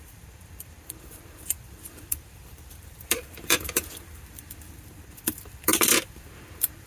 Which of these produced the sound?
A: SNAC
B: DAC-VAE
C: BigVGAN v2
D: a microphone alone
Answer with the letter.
C